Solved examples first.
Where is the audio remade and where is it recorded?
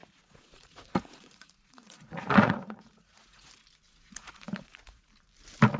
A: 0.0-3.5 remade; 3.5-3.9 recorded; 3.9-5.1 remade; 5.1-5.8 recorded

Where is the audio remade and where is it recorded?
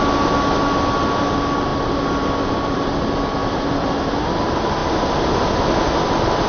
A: 0.0-6.5 recorded